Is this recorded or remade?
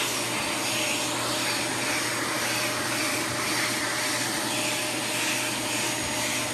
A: recorded